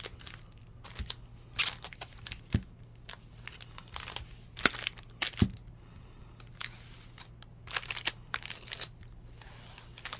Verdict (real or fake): real